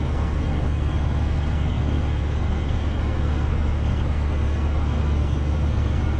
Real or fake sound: fake